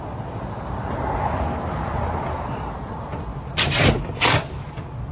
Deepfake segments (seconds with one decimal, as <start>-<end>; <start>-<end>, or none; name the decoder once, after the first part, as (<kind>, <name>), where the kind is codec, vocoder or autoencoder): none